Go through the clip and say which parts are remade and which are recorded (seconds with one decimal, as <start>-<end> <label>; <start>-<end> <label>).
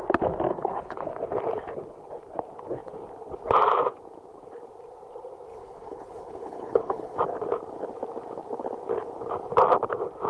0.0-0.5 recorded; 0.5-1.1 remade; 1.1-5.5 recorded; 5.5-7.2 remade; 7.2-10.3 recorded